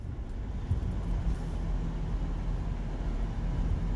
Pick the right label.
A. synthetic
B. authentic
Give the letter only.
B